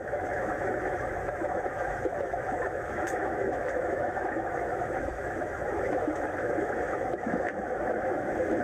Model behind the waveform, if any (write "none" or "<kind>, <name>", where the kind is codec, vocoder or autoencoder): autoencoder, DAC-VAE